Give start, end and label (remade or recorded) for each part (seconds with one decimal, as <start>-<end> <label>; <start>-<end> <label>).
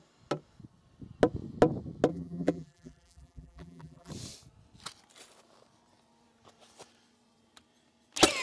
0.0-2.1 recorded; 2.1-4.1 remade; 4.1-8.4 recorded